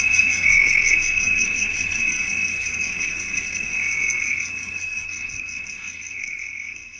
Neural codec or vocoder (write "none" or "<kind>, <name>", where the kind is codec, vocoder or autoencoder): codec, SNAC